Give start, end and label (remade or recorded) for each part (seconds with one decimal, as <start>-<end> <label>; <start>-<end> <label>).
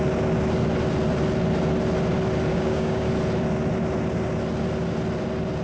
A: 0.0-2.5 recorded; 2.5-3.1 remade; 3.1-5.6 recorded